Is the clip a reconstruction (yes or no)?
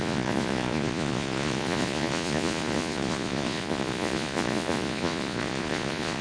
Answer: yes